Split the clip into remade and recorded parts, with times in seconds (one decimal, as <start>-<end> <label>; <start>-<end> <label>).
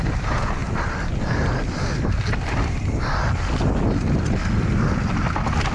0.0-5.7 recorded